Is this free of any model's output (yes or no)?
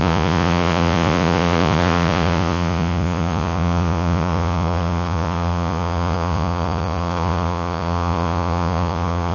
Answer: no